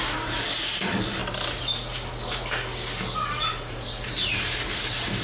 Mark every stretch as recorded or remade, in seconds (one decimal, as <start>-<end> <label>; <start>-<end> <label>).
0.0-1.2 remade; 1.2-3.4 recorded; 3.4-5.2 remade